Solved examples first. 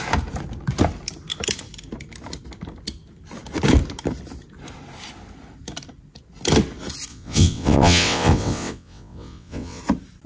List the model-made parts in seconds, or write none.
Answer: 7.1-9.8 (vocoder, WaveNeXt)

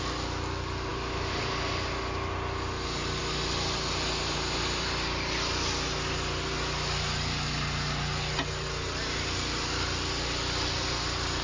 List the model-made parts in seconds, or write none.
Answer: none

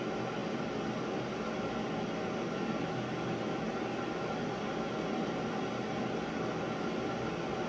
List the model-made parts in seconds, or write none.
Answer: none

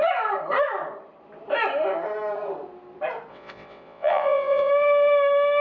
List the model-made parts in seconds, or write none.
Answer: 3.3-4.7 (vocoder, WaveNeXt)

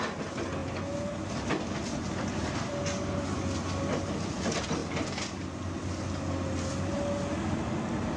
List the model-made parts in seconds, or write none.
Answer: none

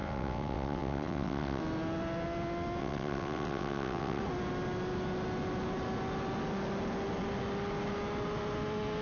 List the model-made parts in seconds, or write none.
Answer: 0.0-1.6 (vocoder, WaveNeXt); 2.8-4.2

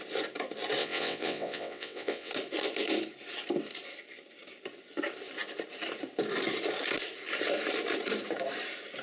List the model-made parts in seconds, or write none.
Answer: 0.8-2.3 (vocoder, WaveNeXt)

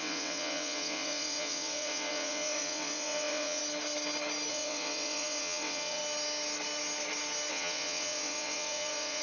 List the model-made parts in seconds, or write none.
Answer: 0.0-3.6 (vocoder, WaveNeXt); 4.5-6.0; 7.5-9.2